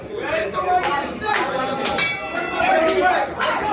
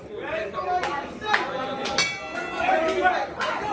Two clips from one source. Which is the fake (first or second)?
first